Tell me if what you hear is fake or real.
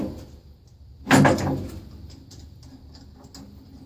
real